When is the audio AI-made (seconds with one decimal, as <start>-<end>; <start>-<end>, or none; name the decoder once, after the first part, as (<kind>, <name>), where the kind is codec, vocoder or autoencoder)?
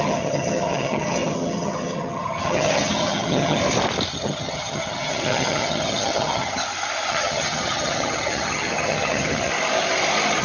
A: 0.0-3.6 (vocoder, HiFi-GAN); 4.1-6.6; 7.1-9.5